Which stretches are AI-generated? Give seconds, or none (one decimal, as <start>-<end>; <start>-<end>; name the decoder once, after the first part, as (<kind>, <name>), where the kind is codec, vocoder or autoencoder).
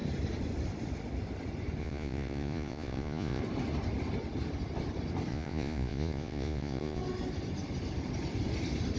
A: 1.8-3.4 (vocoder, Vocos); 5.3-7.0